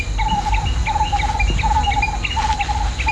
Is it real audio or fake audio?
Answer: real